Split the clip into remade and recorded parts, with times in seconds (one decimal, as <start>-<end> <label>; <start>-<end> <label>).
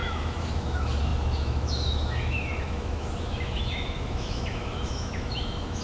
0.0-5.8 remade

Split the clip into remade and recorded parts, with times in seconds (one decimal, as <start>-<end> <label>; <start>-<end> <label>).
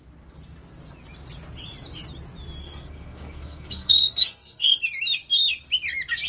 0.0-2.6 recorded; 2.6-4.8 remade; 4.8-6.3 recorded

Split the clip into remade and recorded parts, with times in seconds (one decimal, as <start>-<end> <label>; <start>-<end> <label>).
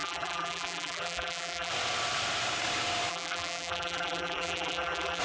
0.0-1.7 remade; 1.7-3.1 recorded; 3.1-5.2 remade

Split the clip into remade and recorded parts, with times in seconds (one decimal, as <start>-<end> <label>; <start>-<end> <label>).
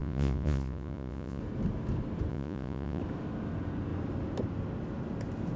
0.0-1.4 remade; 1.4-2.3 recorded; 2.3-3.0 remade; 3.0-5.6 recorded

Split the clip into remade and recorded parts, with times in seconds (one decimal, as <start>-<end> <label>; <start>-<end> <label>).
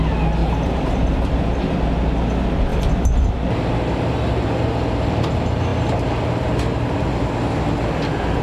0.0-0.4 recorded; 0.4-1.6 remade; 1.6-8.4 recorded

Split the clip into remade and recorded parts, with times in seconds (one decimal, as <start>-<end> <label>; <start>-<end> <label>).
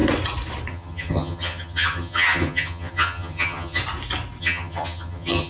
0.0-0.7 recorded; 0.7-3.8 remade; 3.8-4.4 recorded; 4.4-5.5 remade